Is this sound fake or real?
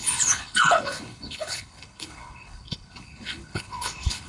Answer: fake